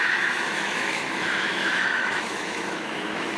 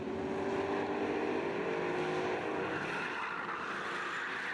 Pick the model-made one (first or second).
first